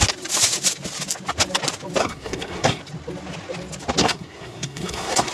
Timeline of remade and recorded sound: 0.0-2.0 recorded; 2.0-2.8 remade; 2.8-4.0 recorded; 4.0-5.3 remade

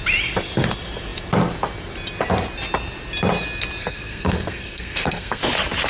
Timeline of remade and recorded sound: 0.0-3.8 recorded; 3.8-5.4 remade; 5.4-5.9 recorded

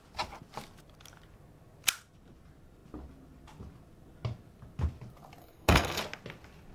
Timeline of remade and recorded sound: 0.0-5.4 recorded; 5.4-6.0 remade; 6.0-6.7 recorded

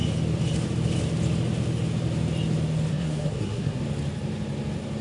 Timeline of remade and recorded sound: 0.0-2.9 recorded; 2.9-3.8 remade; 3.8-5.0 recorded

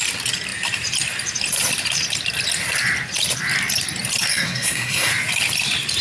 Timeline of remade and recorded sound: 0.0-4.3 recorded; 4.3-5.1 remade; 5.1-6.0 recorded

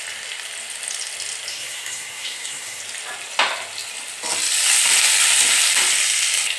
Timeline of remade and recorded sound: 0.0-1.5 recorded; 1.5-2.8 remade; 2.8-6.6 recorded

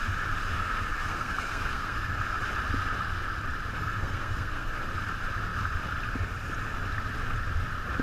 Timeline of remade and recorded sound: 0.0-0.5 recorded; 0.5-2.2 remade; 2.2-3.8 recorded; 3.8-4.7 remade; 4.7-8.0 recorded

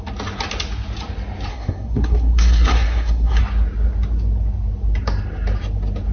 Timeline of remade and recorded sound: 0.0-1.5 recorded; 1.5-3.4 remade; 3.4-6.1 recorded